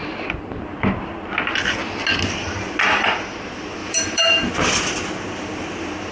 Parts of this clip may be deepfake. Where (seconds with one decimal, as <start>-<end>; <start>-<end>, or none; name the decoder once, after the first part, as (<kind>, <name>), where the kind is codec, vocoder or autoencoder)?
3.8-4.5 (vocoder, BigVGAN v2)